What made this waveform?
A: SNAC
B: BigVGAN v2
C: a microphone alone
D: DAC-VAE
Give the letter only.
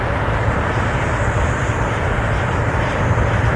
B